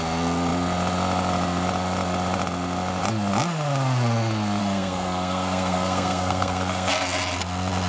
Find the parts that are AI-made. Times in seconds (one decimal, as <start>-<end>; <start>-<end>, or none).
4.6-6.9